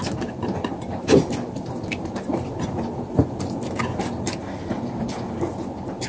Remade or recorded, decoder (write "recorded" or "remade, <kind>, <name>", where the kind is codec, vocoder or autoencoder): recorded